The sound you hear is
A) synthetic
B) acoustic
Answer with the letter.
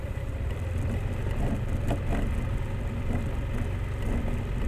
B